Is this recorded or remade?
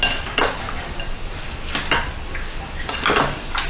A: recorded